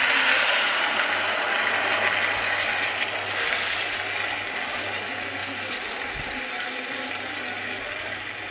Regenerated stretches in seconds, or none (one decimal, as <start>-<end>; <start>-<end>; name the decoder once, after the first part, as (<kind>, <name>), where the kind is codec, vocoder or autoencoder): none